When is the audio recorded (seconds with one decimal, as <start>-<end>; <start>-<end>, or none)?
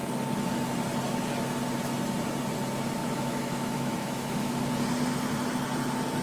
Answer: 0.0-3.0; 4.6-6.2